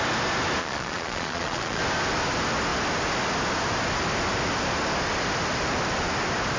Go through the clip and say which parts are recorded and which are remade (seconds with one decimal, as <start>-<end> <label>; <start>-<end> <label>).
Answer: 0.0-0.6 recorded; 0.6-1.8 remade; 1.8-6.6 recorded